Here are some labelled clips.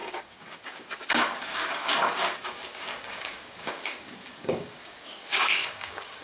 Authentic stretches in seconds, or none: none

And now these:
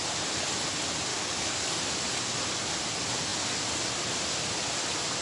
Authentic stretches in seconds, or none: 0.0-1.1; 1.8-5.2